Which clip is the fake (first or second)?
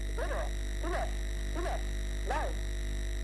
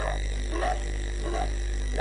second